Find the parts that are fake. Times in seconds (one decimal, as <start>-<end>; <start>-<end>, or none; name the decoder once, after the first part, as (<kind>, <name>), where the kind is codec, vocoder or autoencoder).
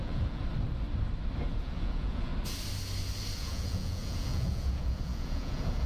0.0-0.4 (vocoder, Vocos); 1.5-2.3; 3.4-5.9